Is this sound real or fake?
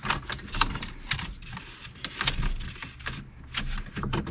real